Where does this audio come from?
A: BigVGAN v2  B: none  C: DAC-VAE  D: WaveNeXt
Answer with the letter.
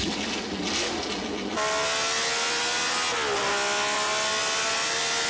B